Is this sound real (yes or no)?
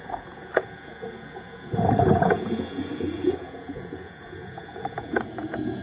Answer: no